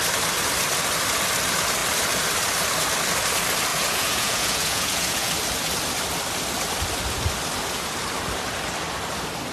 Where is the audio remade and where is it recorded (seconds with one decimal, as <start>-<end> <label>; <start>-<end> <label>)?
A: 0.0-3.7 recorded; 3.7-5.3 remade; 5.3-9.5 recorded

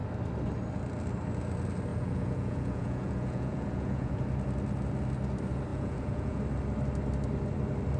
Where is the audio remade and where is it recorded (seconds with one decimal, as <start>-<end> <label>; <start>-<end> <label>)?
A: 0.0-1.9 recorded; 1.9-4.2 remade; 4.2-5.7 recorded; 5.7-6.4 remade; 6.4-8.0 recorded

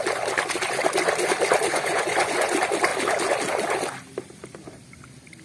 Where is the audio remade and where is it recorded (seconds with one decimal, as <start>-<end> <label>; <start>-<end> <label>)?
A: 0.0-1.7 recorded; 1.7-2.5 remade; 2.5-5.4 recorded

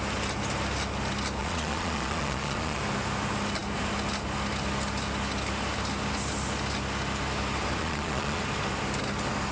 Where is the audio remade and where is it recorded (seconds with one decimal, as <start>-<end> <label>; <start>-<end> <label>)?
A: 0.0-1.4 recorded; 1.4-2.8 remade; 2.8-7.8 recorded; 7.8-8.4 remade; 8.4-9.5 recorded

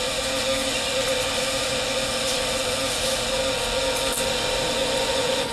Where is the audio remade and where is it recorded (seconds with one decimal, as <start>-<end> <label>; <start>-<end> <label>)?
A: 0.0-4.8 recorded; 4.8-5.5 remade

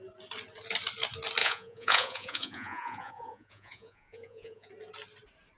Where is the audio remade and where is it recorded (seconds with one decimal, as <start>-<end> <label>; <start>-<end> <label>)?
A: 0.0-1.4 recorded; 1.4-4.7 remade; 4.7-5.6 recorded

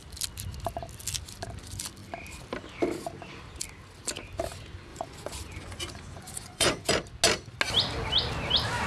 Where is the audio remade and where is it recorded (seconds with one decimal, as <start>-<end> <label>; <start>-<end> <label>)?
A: 0.0-4.9 recorded; 4.9-6.9 remade; 6.9-8.9 recorded